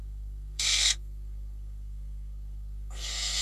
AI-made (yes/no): yes